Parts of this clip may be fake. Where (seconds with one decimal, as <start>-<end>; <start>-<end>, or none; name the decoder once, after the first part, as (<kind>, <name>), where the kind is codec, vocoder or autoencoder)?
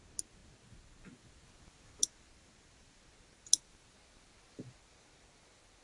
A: none